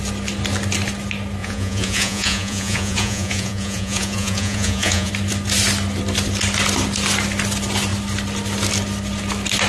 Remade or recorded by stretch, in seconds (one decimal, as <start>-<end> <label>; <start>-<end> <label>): 0.0-1.4 recorded; 1.4-5.1 remade; 5.1-9.7 recorded